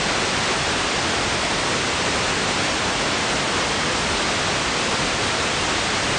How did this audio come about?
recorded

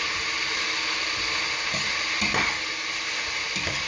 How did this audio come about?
recorded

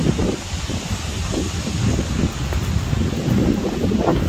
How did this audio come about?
recorded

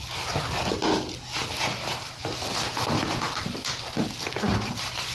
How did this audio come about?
recorded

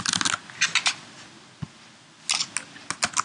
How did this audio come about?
recorded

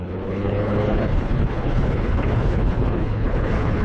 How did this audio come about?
remade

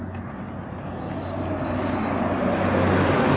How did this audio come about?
recorded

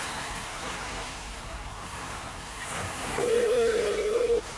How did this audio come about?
remade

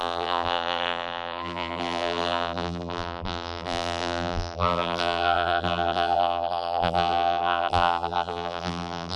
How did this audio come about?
remade